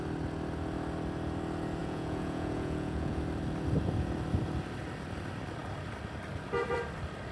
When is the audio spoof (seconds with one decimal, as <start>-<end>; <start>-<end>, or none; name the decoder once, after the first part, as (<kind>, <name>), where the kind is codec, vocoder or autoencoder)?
1.8-3.2 (vocoder, Vocos)